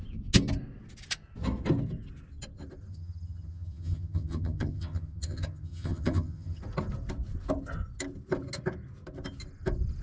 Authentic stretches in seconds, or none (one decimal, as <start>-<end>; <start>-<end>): 0.0-2.9; 6.6-10.0